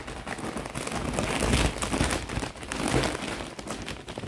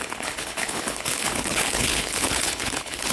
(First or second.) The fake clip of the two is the second